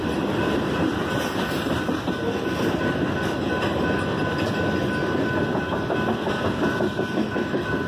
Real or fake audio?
real